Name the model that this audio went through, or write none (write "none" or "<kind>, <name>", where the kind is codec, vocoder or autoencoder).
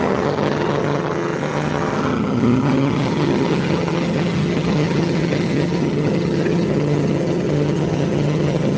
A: vocoder, HiFi-GAN